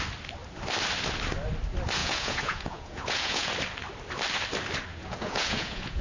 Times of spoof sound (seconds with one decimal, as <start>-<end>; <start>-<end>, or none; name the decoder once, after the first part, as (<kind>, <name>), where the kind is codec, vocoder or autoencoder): 2.0-3.5 (vocoder, Vocos); 4.9-6.0